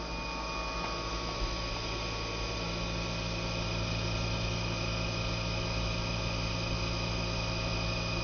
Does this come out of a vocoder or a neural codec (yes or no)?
no